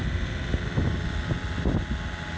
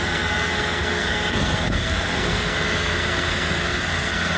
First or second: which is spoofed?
second